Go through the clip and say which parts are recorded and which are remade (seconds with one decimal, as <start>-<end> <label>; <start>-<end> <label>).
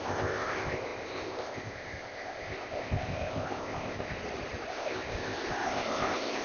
0.0-4.2 remade; 4.2-4.7 recorded; 4.7-6.4 remade